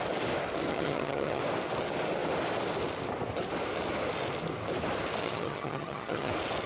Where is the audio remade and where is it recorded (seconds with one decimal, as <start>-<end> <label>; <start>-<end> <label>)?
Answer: 0.0-0.7 recorded; 0.7-1.4 remade; 1.4-5.2 recorded; 5.2-6.3 remade; 6.3-6.7 recorded